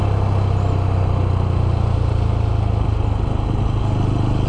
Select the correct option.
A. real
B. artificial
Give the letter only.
A